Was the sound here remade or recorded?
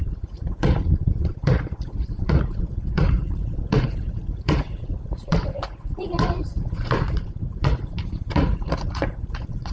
remade